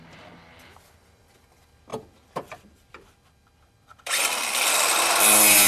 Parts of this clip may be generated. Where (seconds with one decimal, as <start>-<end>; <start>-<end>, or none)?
1.9-5.1